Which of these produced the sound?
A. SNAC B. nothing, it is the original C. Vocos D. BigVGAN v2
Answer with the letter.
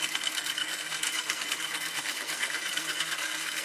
A